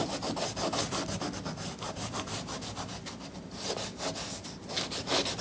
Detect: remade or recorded recorded